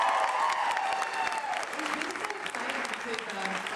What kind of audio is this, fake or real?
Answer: real